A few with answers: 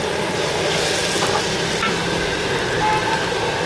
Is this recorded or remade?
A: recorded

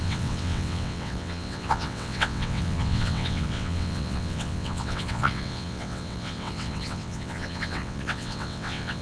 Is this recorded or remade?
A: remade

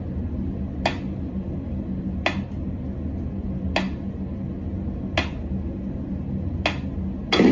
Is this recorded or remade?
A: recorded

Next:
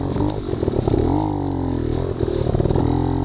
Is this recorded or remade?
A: recorded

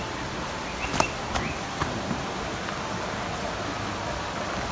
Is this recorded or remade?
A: recorded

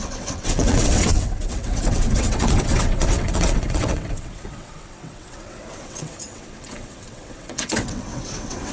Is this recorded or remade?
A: remade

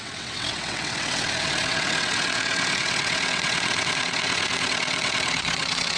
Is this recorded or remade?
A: remade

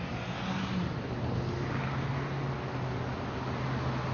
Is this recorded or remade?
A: recorded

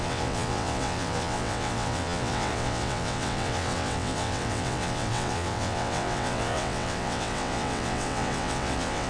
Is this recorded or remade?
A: remade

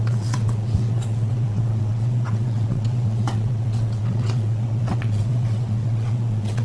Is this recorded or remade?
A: remade